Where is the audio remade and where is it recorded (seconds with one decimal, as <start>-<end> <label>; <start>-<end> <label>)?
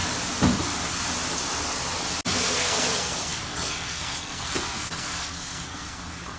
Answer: 0.0-2.5 recorded; 2.5-6.4 remade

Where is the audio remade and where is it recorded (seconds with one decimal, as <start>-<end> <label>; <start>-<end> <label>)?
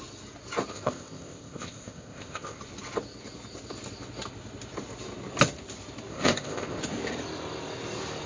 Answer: 0.0-0.7 recorded; 0.7-2.6 remade; 2.6-6.1 recorded; 6.1-6.8 remade; 6.8-8.3 recorded